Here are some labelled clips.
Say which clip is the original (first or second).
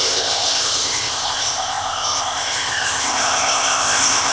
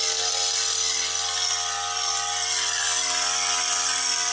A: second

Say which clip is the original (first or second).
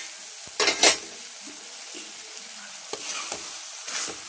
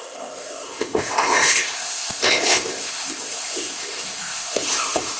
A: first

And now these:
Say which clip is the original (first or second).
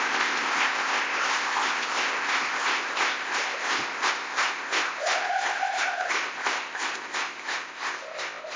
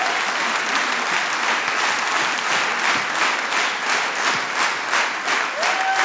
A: second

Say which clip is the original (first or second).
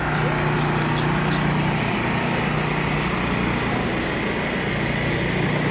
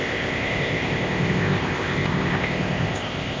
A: first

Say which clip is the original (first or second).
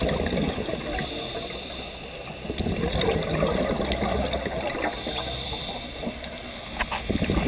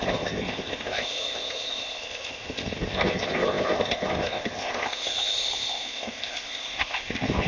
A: first